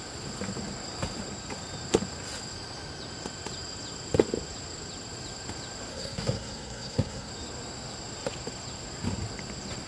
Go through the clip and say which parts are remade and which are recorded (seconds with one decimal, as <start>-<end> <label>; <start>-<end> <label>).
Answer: 0.0-5.9 recorded; 5.9-7.3 remade; 7.3-9.9 recorded